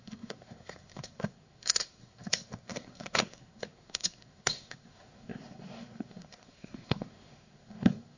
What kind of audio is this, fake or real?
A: fake